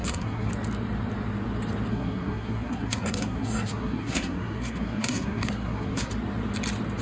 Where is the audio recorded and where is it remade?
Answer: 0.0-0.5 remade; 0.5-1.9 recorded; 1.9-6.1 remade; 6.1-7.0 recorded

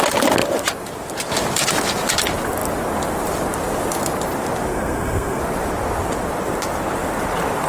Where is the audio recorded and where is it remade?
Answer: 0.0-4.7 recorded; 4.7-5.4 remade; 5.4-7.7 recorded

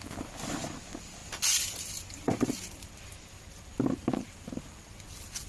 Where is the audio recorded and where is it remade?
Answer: 0.0-5.5 recorded

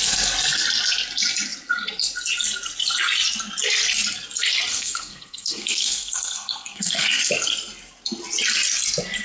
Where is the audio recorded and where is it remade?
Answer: 0.0-4.7 recorded; 4.7-7.2 remade; 7.2-9.2 recorded

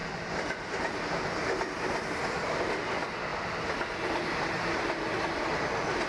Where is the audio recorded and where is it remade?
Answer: 0.0-6.1 recorded

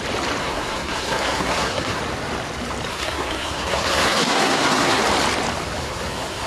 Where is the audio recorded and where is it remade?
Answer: 0.0-0.4 recorded; 0.4-2.0 remade; 2.0-2.9 recorded; 2.9-5.0 remade; 5.0-5.8 recorded; 5.8-6.5 remade

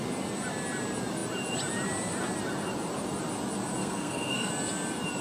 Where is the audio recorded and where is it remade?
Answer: 0.0-3.8 recorded; 3.8-4.5 remade; 4.5-5.2 recorded

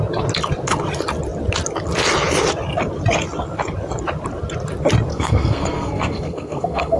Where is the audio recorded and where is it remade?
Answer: 0.0-5.1 recorded; 5.1-7.0 remade